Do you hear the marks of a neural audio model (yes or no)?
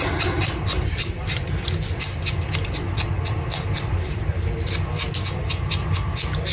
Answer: no